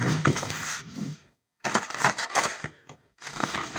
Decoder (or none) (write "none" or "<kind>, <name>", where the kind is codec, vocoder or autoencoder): codec, DAC